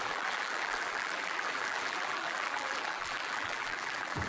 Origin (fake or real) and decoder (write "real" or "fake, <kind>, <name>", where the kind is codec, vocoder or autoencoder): fake, vocoder, BigVGAN v2